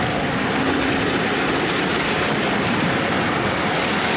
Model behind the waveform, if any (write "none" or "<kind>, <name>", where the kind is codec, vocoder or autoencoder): none